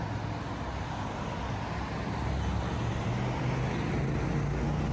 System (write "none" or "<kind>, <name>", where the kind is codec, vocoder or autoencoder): none